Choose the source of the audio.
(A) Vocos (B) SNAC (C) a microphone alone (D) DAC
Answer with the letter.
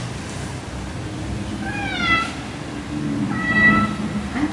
C